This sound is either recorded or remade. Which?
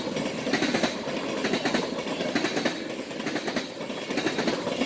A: recorded